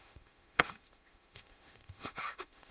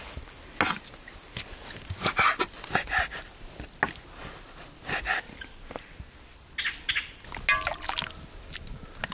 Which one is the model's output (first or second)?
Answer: first